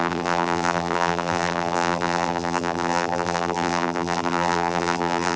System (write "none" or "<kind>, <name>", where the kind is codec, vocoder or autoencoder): vocoder, BigVGAN v2